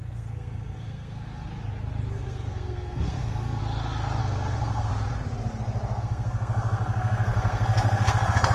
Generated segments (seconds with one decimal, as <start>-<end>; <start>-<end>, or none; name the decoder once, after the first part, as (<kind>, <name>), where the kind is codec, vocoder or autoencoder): 0.0-1.5 (codec, SNAC); 2.1-3.6; 4.2-4.9; 6.0-8.5